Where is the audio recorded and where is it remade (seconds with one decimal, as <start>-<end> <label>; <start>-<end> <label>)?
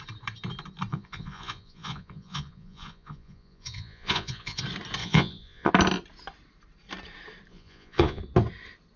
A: 0.0-0.9 recorded; 0.9-4.6 remade; 4.6-5.0 recorded; 5.0-5.7 remade; 5.7-7.5 recorded; 7.5-8.2 remade; 8.2-9.0 recorded